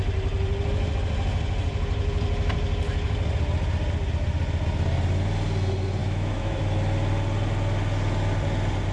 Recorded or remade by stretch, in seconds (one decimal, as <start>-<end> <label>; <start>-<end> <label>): 0.0-6.0 recorded; 6.0-6.6 remade; 6.6-8.9 recorded